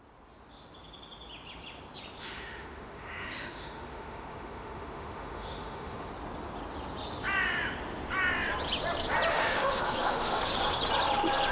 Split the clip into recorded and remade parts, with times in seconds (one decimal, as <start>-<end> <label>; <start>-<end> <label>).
0.0-2.2 recorded; 2.2-6.1 remade; 6.1-9.3 recorded; 9.3-10.4 remade; 10.4-11.5 recorded